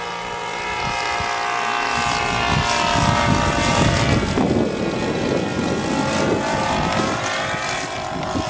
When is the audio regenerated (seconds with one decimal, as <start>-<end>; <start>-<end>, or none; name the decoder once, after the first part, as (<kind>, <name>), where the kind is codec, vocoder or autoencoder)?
none